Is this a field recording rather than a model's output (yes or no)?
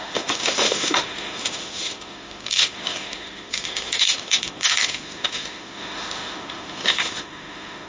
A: no